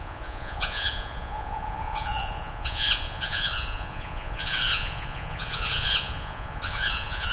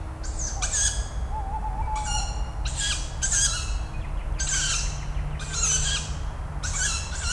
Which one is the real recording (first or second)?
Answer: second